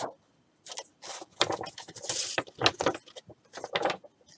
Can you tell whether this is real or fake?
real